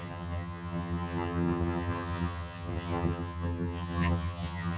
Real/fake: fake